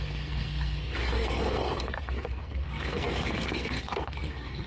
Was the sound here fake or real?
fake